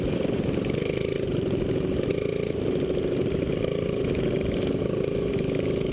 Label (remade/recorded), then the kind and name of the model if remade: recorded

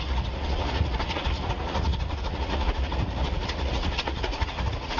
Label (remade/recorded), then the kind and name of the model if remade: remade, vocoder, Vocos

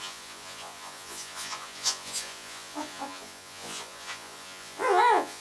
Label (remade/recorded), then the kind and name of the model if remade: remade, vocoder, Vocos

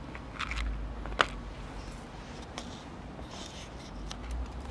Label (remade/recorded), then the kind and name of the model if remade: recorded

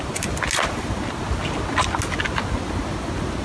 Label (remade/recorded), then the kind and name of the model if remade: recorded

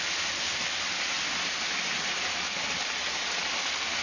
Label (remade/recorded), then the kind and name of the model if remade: recorded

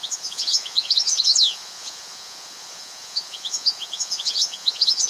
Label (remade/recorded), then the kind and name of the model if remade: remade, vocoder, Vocos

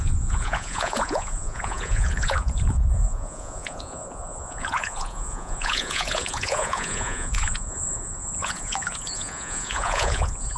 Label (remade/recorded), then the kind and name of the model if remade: remade, vocoder, Vocos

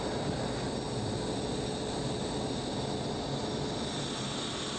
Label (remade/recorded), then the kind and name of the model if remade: recorded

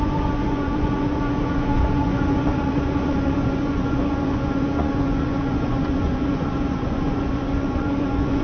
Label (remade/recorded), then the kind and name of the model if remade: remade, vocoder, Vocos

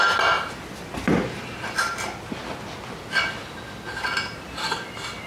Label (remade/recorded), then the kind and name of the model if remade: recorded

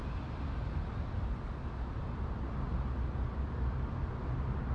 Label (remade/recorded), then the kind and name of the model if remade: recorded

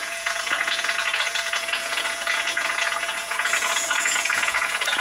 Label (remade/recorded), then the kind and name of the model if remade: remade, vocoder, Vocos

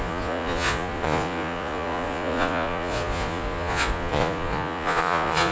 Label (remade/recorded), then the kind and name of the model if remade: remade, vocoder, Vocos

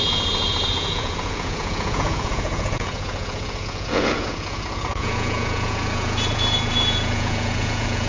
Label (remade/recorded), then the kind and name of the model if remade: remade, vocoder, Vocos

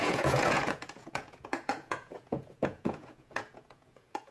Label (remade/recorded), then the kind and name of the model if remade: remade, vocoder, Vocos